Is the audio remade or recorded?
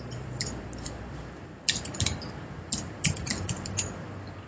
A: remade